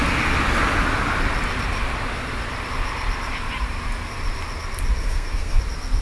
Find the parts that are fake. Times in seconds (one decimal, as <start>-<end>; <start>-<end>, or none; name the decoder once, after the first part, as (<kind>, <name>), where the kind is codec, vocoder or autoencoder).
5.0-5.6 (codec, SNAC)